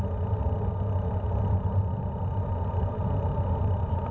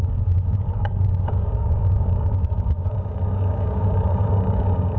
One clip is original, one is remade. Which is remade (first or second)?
second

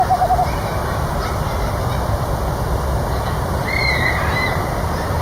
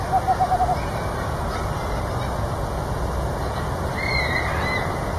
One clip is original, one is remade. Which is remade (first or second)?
first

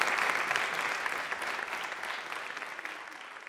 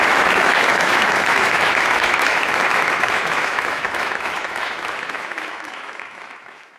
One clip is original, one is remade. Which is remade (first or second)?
second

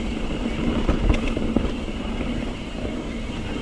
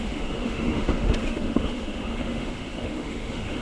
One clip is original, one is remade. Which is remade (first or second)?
second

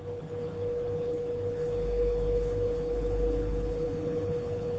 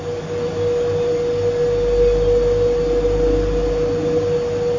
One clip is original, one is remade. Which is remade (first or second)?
first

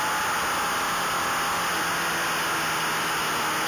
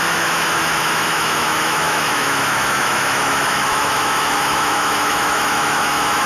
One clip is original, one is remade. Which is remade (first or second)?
second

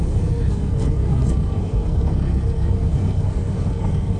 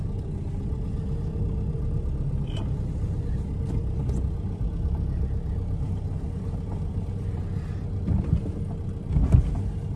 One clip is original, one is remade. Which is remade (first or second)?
first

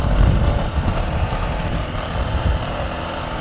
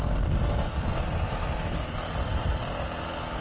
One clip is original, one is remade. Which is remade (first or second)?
first